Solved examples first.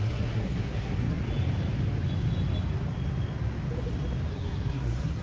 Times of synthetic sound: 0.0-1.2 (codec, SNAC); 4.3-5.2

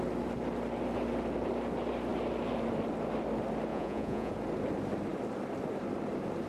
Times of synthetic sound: 3.7-4.3 (vocoder, Vocos)

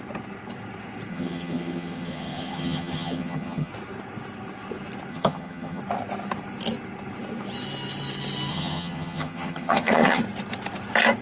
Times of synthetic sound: 1.1-3.7 (vocoder, HiFi-GAN); 5.1-5.8; 8.5-10.2

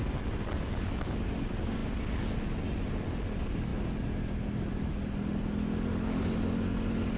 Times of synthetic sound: none

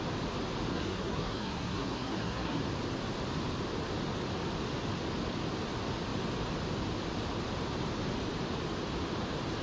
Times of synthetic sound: 0.7-2.6 (codec, SNAC)

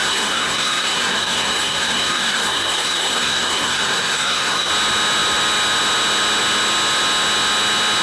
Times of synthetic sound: 0.0-4.7 (codec, SNAC)

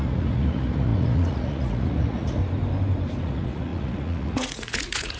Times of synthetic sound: 0.0-2.4 (vocoder, Vocos); 3.2-5.2

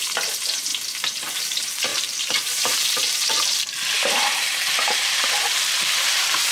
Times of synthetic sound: 0.0-0.7 (vocoder, BigVGAN v2); 1.4-6.5